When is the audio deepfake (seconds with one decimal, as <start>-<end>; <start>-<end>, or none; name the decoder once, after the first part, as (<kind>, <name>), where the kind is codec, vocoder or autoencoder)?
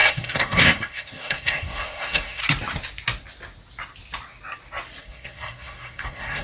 0.0-2.4 (codec, SNAC); 5.0-6.4